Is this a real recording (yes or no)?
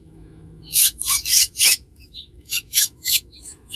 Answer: no